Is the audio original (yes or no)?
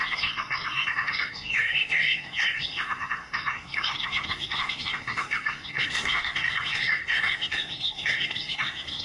no